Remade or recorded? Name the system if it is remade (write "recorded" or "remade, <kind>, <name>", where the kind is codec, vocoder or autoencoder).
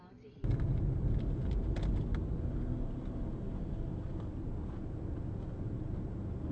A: recorded